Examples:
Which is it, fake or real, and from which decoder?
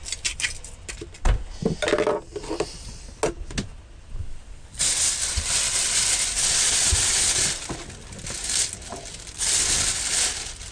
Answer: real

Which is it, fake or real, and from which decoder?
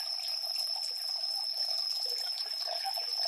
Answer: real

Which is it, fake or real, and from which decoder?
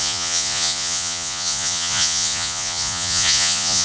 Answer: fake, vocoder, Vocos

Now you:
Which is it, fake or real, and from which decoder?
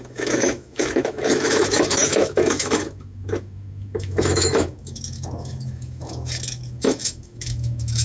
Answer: fake, autoencoder, DAC-VAE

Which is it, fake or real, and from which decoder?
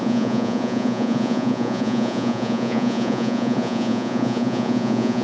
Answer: fake, vocoder, Vocos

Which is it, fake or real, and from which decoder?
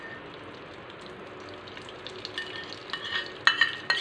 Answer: real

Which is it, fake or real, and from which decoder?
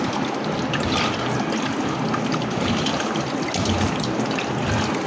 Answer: real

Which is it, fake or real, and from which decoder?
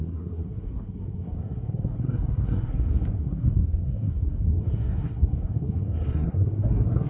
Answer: fake, codec, SNAC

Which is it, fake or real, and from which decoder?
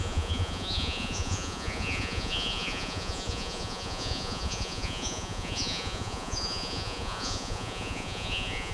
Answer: fake, vocoder, Vocos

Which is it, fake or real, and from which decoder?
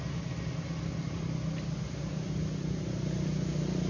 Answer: real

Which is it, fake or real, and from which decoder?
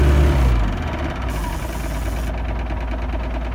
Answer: real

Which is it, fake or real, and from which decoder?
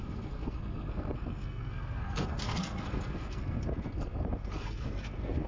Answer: fake, codec, SNAC